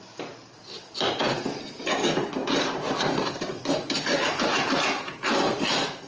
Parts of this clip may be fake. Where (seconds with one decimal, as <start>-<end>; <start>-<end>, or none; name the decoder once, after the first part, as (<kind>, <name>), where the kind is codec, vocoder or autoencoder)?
0.0-6.1 (vocoder, BigVGAN v2)